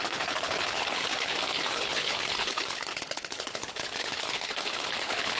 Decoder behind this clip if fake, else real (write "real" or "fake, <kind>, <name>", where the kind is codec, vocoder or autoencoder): fake, codec, HILCodec